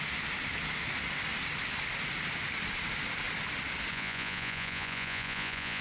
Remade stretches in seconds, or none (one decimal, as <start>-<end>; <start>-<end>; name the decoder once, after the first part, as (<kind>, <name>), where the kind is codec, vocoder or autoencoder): 3.9-5.8 (vocoder, Vocos)